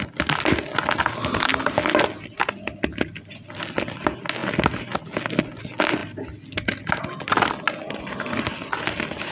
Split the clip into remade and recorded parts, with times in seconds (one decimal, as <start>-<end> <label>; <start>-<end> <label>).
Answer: 0.0-9.3 recorded